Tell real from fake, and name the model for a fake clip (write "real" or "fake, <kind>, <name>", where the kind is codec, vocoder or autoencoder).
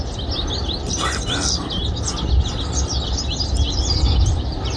real